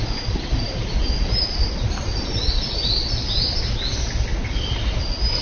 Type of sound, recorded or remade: recorded